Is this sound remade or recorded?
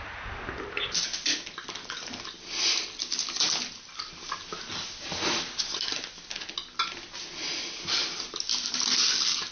recorded